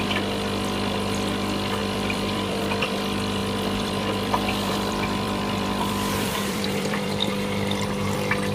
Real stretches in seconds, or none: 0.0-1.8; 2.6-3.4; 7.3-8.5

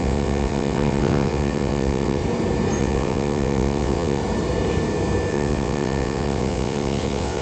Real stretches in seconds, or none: 2.2-2.8; 4.2-5.3

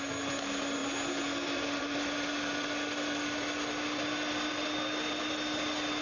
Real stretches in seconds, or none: 0.0-6.0